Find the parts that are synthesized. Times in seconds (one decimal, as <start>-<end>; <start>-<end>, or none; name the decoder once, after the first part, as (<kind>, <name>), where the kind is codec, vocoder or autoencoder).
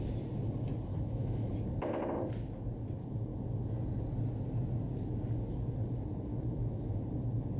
0.9-1.5 (autoencoder, DAC-VAE); 6.3-7.0